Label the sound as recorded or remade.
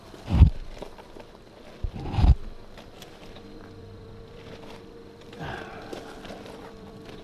remade